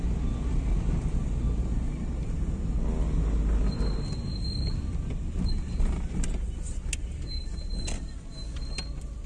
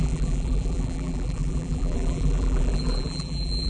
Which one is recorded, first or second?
first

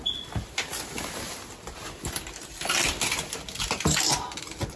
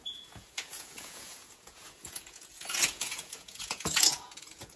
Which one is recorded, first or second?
first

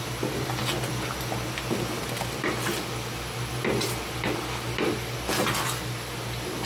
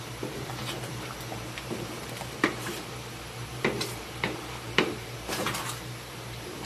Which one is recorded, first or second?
first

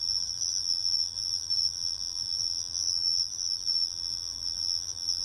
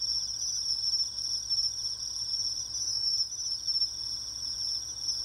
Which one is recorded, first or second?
second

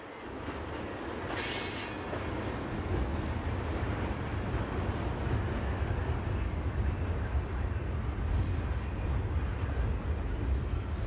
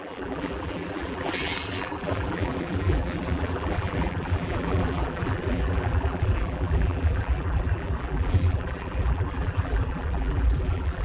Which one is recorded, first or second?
first